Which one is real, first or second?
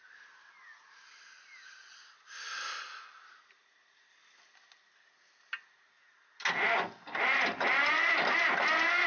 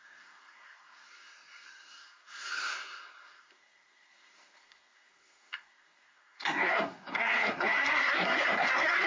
first